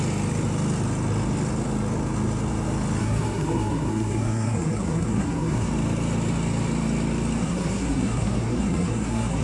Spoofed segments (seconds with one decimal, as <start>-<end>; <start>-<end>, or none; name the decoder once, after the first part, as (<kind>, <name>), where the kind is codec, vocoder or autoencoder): 3.0-5.7 (codec, SNAC); 7.4-9.4